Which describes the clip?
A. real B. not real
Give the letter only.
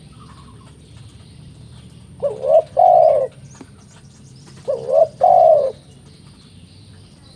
B